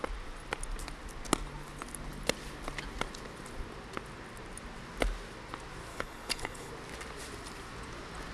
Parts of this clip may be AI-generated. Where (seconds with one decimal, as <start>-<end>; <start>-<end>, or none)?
5.9-6.7